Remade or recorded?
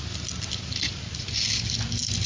recorded